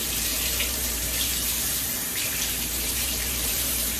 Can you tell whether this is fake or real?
fake